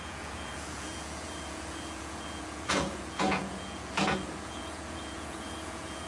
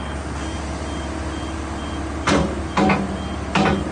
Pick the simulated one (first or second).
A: first